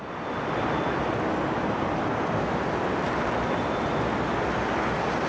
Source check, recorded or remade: recorded